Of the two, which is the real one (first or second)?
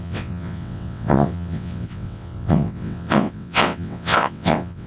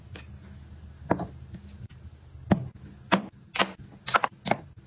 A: second